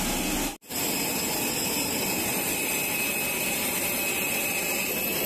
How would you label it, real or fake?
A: real